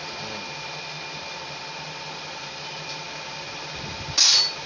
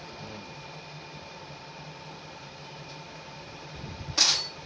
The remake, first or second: second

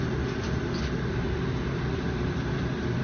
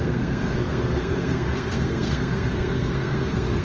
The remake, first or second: second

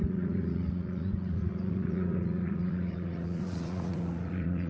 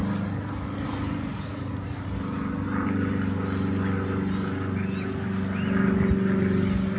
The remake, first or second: first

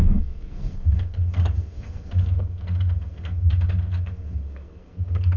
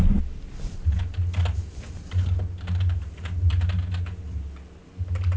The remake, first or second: first